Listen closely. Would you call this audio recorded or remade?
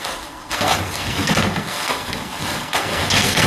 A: remade